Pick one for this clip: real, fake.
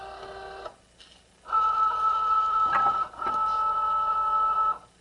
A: real